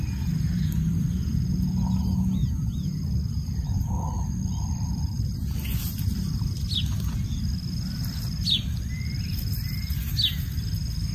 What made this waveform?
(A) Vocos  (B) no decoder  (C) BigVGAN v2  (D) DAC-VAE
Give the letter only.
B